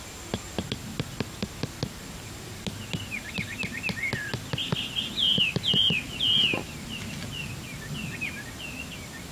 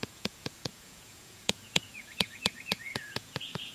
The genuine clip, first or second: first